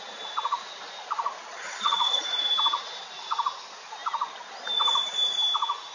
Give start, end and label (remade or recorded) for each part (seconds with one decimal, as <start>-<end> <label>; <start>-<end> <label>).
0.0-1.5 recorded; 1.5-2.2 remade; 2.2-5.9 recorded